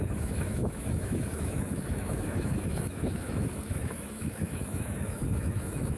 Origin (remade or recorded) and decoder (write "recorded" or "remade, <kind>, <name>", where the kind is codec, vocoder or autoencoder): remade, autoencoder, DAC-VAE